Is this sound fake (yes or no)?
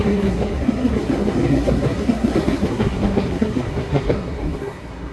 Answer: yes